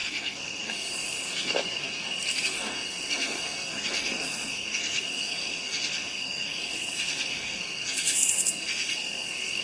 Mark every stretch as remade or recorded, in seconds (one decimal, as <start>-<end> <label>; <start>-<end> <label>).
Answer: 0.0-9.6 remade